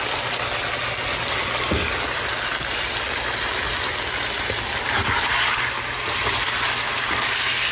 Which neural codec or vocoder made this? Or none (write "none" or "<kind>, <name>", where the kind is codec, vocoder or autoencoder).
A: none